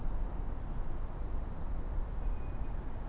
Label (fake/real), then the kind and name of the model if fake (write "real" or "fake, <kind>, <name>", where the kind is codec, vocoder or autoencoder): real